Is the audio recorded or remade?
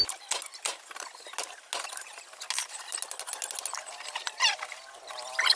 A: recorded